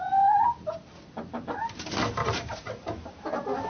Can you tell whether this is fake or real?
real